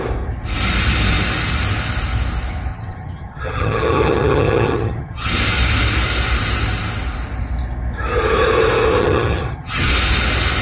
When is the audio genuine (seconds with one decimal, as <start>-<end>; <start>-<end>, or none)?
0.0-2.7; 5.3-9.0; 9.9-10.6